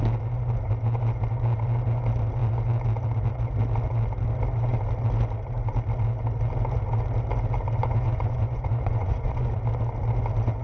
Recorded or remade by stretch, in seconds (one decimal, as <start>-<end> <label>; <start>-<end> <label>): 0.0-7.8 recorded; 7.8-9.5 remade; 9.5-10.6 recorded